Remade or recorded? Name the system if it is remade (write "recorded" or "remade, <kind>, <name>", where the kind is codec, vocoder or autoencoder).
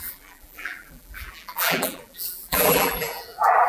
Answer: remade, vocoder, BigVGAN v2